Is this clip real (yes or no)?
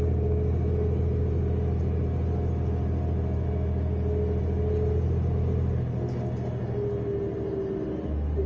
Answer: yes